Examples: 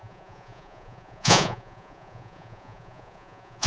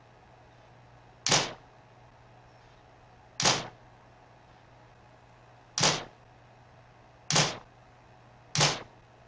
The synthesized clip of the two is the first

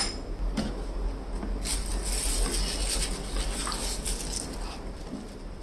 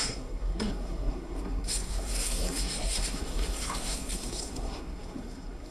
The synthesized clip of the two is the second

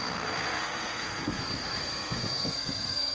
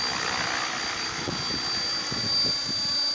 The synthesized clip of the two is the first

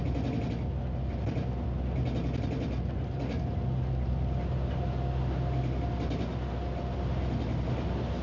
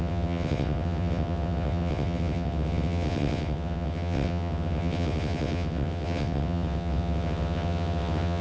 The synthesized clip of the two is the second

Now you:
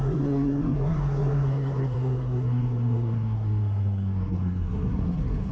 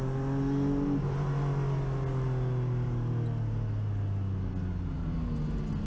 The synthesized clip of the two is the first